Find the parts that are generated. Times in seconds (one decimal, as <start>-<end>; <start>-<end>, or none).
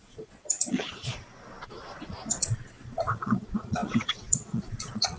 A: 0.0-5.2